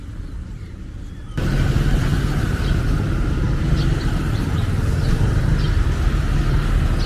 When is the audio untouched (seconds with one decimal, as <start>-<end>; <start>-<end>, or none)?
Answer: 0.0-7.1